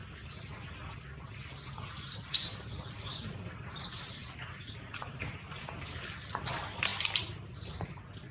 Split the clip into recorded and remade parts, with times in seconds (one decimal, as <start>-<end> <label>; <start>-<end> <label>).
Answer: 0.0-8.3 recorded